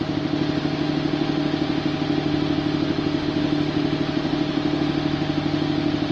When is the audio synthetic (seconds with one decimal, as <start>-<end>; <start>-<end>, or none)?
none